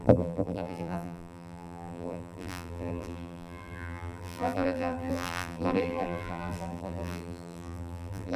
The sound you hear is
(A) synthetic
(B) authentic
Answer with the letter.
A